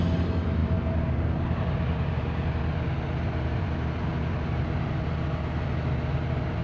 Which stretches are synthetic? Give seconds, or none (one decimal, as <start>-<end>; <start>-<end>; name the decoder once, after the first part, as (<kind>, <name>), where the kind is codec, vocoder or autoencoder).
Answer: none